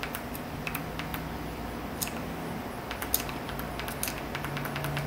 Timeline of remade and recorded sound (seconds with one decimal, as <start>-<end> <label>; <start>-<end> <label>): 0.0-5.1 recorded